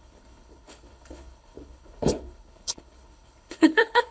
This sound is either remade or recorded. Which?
remade